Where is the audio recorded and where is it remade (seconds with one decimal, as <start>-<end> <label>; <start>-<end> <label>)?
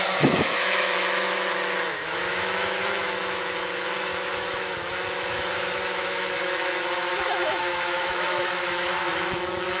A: 0.0-9.8 remade